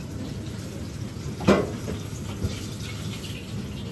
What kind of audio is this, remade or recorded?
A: recorded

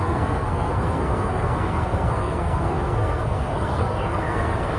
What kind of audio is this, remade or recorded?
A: remade